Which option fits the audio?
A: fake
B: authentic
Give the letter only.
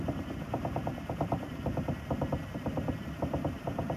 B